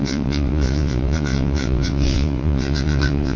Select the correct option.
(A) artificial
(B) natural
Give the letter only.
A